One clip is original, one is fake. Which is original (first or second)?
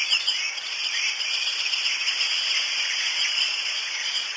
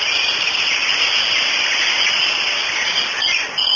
second